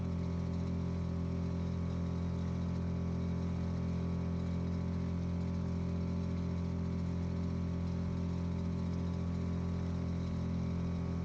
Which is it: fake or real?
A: real